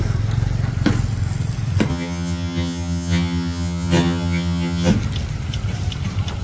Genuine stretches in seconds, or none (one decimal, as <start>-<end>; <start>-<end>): 0.0-1.9; 4.9-6.4